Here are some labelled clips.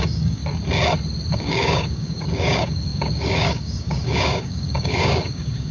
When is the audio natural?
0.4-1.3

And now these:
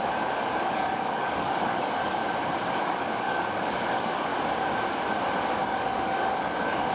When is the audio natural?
2.2-2.8; 4.3-5.6